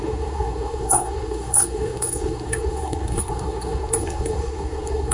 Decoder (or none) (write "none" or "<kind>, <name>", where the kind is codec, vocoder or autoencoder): codec, SNAC